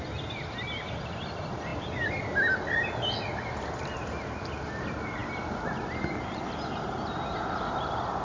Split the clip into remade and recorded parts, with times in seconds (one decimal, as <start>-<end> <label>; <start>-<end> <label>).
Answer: 0.0-8.2 recorded